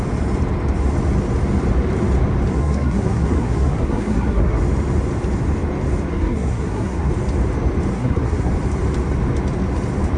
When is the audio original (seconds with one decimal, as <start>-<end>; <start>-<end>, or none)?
0.0-2.5; 4.6-6.1; 7.1-7.9; 8.5-10.2